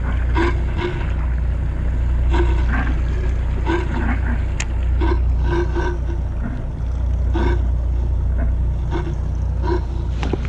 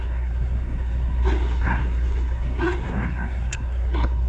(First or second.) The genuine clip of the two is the first